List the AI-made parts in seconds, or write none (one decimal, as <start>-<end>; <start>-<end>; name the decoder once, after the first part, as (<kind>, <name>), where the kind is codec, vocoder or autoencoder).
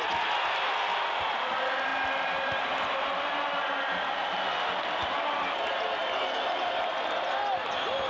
none